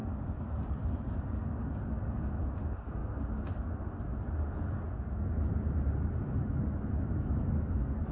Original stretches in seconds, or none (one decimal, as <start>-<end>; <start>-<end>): 0.0-8.1